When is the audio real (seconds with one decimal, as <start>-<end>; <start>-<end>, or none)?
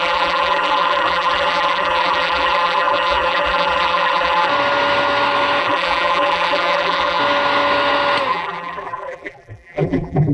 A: 4.5-5.6; 7.2-8.3